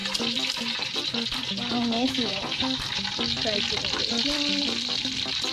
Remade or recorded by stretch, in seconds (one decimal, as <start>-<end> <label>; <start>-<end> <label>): 0.0-5.5 recorded